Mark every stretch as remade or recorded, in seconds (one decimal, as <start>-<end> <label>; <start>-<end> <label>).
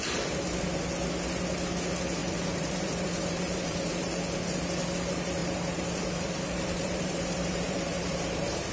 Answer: 0.0-2.2 recorded; 2.2-4.2 remade; 4.2-5.4 recorded; 5.4-8.7 remade